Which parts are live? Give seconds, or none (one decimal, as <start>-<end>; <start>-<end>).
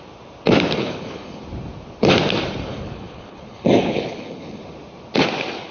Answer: 0.0-0.8; 1.4-2.7; 4.6-5.7